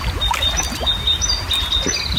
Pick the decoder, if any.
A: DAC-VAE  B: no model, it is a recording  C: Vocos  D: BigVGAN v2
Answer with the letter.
B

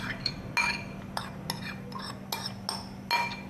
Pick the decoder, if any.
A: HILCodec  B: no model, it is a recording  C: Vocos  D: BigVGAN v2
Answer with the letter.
B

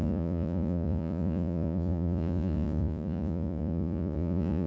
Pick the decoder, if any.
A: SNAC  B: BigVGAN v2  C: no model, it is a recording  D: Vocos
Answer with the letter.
D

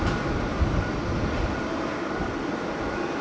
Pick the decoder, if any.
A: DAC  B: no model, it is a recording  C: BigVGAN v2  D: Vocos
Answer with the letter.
B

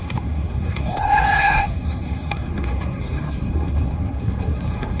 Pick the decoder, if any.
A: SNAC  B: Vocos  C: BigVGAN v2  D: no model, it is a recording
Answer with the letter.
A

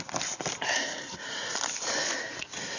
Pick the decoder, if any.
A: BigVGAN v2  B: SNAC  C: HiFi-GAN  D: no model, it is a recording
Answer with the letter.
D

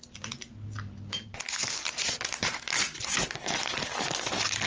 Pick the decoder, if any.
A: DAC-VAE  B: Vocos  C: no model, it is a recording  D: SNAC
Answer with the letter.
C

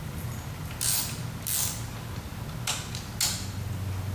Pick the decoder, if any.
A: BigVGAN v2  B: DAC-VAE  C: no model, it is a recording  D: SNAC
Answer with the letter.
C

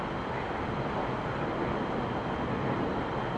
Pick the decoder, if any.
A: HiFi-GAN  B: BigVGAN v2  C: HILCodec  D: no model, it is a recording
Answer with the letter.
D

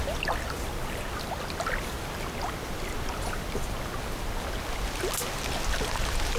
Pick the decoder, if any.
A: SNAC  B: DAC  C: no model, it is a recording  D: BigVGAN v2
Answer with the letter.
C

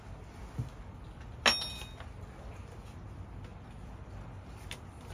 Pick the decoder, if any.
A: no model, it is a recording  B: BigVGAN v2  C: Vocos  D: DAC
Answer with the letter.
A